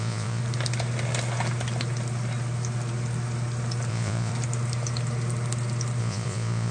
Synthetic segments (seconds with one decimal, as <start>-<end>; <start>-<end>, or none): 0.0-0.4; 3.9-4.3; 6.0-6.7